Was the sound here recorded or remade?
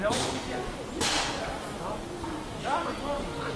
recorded